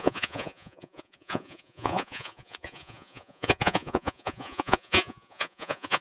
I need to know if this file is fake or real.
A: fake